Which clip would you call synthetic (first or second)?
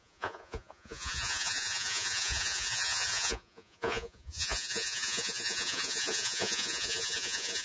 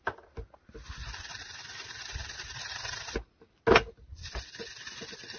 first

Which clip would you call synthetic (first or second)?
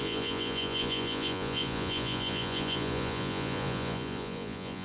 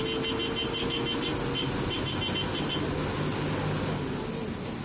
first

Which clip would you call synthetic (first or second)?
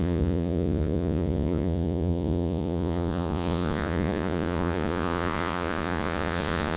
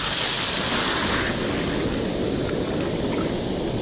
first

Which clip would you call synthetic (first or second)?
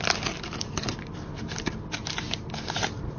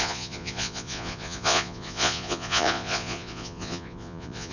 second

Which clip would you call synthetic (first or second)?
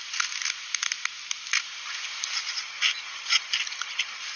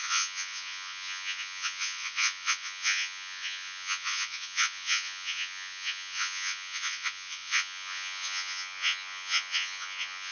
second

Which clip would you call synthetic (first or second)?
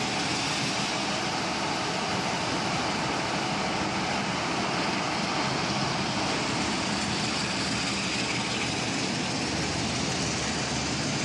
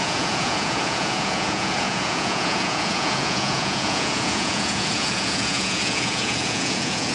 second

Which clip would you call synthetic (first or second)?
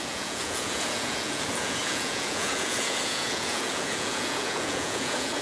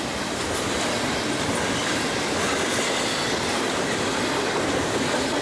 first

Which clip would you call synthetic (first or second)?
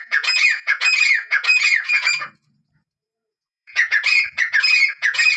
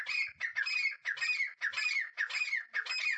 first